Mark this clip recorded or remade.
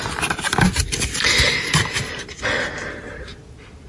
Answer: recorded